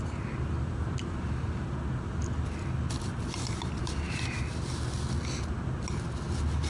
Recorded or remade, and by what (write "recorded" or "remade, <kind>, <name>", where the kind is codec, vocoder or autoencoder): recorded